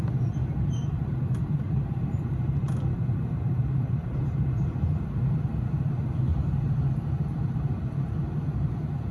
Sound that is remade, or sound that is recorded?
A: remade